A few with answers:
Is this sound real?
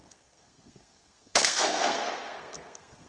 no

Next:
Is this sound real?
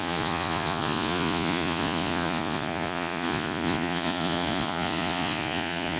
no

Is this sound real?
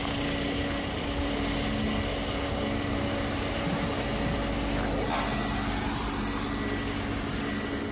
yes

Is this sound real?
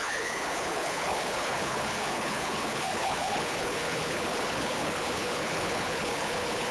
no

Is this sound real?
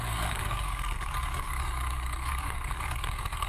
no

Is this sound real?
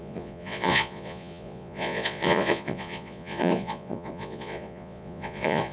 no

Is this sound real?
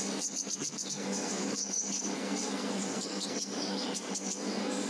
no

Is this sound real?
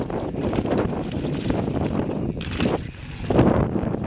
yes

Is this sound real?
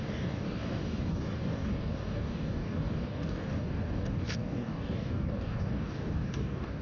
no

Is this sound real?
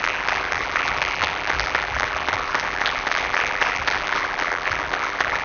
no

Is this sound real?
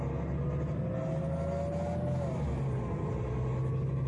yes